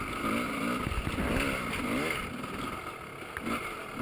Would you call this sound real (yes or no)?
yes